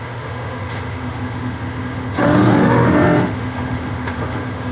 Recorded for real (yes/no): no